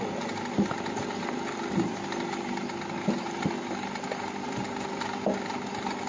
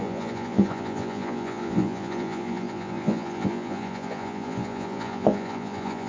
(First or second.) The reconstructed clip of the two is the second